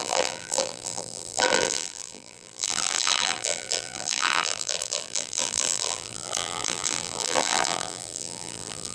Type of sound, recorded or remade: remade